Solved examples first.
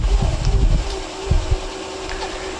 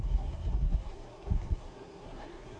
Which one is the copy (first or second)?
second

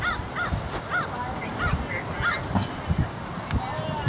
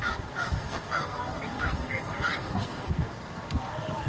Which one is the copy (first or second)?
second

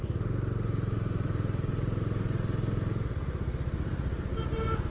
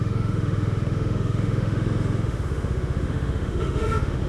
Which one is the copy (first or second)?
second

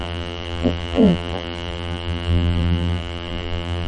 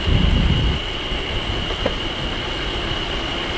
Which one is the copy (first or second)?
first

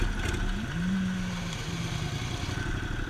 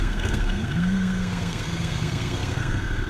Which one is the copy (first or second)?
second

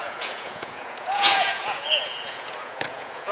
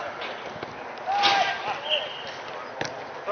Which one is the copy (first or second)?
first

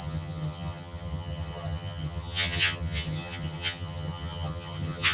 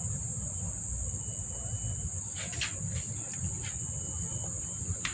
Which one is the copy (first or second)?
first